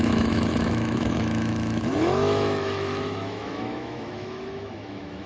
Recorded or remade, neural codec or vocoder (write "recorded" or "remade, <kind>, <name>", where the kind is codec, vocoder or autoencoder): remade, autoencoder, DAC-VAE